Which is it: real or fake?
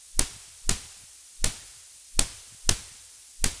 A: real